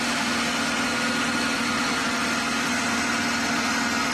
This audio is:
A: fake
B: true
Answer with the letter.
B